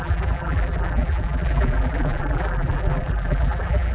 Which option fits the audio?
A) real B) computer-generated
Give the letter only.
B